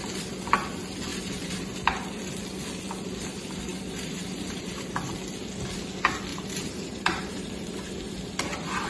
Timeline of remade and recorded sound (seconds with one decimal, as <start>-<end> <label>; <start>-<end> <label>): 0.0-1.1 recorded; 1.1-1.9 remade; 1.9-3.7 recorded; 3.7-5.1 remade; 5.1-6.3 recorded; 6.3-7.9 remade; 7.9-8.9 recorded